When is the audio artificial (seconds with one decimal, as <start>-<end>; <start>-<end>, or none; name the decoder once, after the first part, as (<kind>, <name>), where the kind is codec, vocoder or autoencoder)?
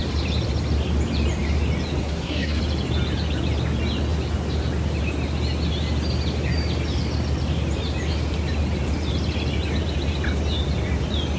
2.0-2.6 (codec, SNAC)